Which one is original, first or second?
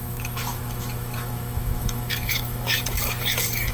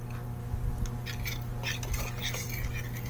second